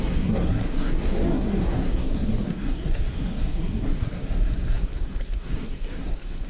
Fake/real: fake